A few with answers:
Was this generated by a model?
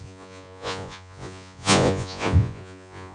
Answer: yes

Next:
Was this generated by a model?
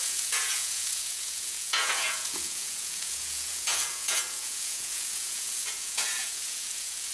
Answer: yes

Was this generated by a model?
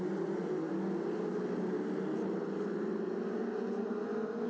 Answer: no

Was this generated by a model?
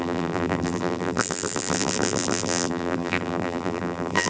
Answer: yes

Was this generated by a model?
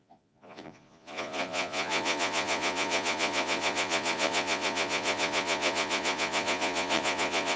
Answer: yes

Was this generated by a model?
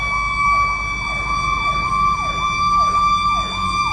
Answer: no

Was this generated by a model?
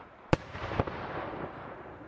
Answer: yes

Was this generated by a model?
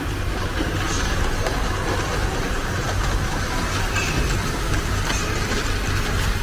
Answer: no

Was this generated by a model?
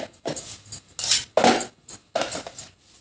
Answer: no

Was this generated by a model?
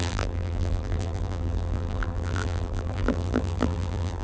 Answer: yes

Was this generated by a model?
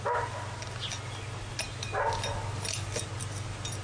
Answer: no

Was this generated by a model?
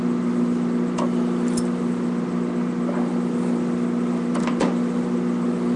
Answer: no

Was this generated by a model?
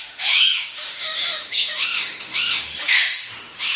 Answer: yes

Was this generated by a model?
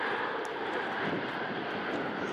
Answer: no